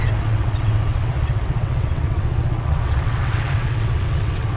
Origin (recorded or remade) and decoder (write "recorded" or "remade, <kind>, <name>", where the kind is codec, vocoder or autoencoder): remade, vocoder, WaveNeXt